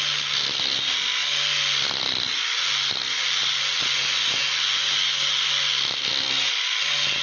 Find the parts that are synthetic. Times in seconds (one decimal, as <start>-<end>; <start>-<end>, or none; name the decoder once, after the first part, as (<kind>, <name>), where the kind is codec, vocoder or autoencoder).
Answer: none